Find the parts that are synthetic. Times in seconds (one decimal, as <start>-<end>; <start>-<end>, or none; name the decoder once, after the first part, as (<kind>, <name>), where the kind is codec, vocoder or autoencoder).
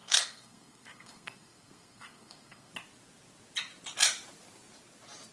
0.0-2.7 (codec, SNAC)